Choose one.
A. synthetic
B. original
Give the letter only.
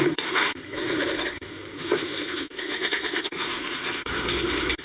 A